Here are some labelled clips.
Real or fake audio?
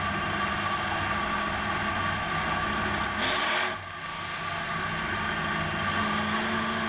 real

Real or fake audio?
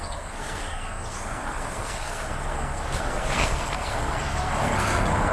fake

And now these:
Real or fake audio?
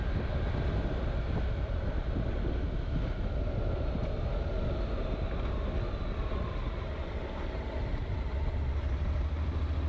real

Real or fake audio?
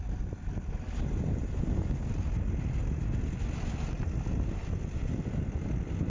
real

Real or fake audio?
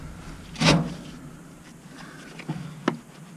real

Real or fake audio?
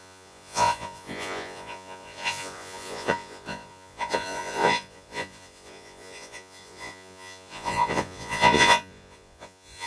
fake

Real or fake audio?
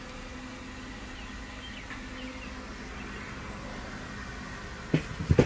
real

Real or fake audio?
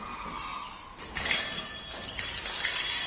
real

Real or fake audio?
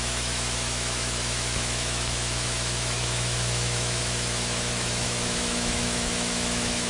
fake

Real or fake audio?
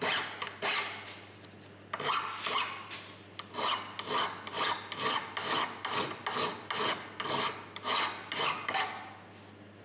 real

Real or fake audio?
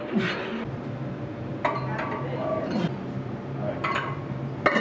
real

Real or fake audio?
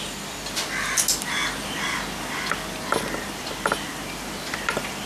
real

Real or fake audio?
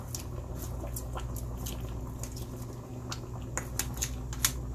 real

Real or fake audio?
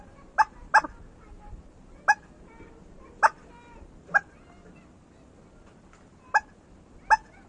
real